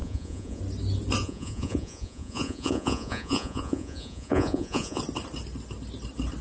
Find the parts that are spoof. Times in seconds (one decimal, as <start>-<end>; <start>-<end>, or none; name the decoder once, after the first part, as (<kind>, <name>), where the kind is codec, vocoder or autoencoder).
0.0-0.6 (vocoder, Vocos); 1.2-5.0